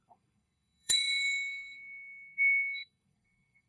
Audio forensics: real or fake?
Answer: fake